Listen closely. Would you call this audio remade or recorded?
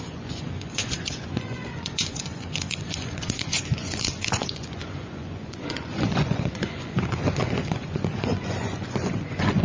remade